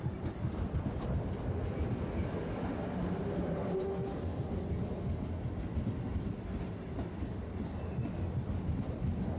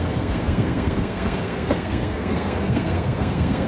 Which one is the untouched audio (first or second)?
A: first